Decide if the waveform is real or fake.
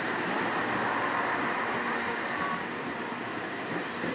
real